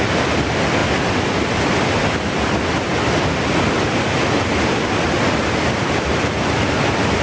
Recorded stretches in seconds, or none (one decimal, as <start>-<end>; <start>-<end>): 0.0-7.2